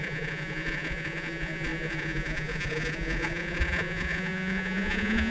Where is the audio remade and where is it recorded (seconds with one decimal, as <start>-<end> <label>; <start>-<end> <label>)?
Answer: 0.0-5.3 remade